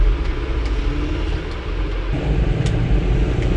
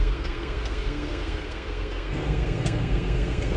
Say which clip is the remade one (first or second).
second